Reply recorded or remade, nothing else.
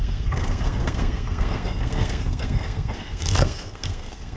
remade